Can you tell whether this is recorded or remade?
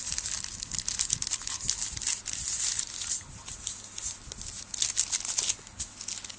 recorded